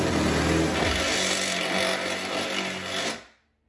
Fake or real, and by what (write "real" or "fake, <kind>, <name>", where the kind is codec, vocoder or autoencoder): real